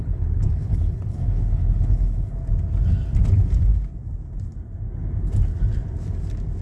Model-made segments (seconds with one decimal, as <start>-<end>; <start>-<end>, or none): 0.0-2.3